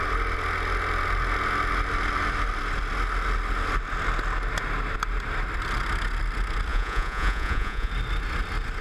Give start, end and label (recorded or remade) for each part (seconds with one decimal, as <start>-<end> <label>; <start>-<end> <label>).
0.0-6.7 recorded; 6.7-7.9 remade; 7.9-8.8 recorded